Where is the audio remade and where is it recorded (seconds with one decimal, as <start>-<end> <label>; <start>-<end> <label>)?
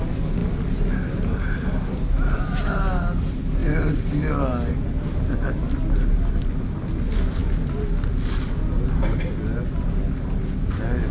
0.0-11.1 recorded